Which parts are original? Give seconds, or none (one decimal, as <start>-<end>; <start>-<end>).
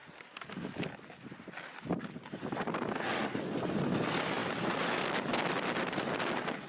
0.0-6.7